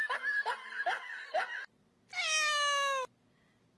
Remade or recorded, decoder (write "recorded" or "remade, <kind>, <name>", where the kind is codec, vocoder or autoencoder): recorded